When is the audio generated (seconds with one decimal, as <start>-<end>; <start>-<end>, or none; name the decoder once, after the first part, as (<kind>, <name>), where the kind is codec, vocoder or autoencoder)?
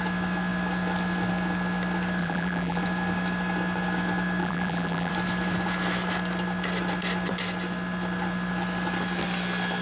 2.2-2.8 (vocoder, BigVGAN v2); 4.4-5.1